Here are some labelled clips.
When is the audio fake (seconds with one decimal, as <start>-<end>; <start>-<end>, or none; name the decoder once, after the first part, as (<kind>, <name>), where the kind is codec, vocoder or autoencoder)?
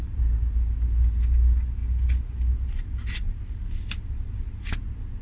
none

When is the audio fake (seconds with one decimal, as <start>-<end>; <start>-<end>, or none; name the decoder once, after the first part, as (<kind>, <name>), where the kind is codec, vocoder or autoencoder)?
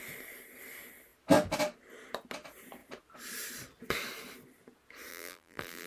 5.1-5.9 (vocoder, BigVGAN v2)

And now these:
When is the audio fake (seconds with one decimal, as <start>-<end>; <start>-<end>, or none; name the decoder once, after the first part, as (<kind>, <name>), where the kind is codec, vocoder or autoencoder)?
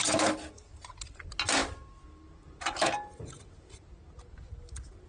none